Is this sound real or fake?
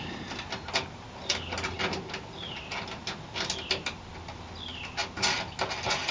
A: real